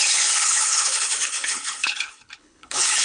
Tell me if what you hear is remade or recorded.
remade